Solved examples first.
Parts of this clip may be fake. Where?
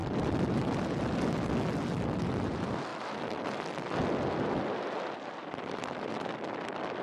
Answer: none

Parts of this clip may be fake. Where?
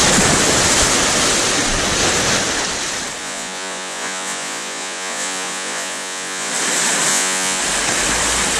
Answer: 3.2-6.5 (vocoder, Vocos); 7.1-7.6